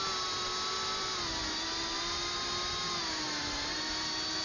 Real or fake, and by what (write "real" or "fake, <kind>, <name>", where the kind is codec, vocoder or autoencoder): real